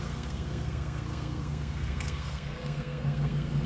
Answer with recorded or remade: remade